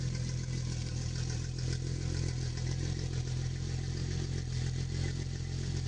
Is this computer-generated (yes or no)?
no